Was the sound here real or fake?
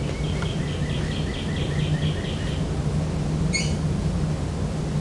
real